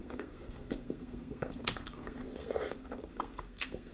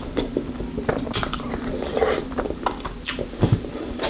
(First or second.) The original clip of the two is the second